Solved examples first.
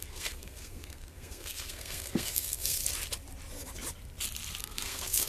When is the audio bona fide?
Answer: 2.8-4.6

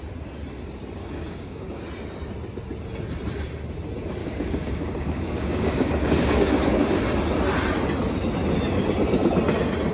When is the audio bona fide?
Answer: 0.0-1.0; 1.8-4.2; 7.0-9.9

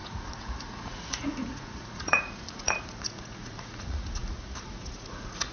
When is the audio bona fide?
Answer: none

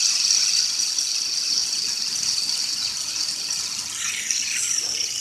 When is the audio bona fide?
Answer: 0.0-5.2

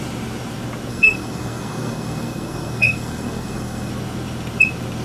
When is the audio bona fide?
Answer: 0.0-0.9; 3.9-5.0

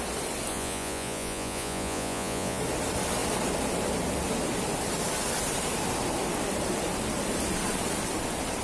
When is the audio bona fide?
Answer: 0.0-0.5; 2.6-8.6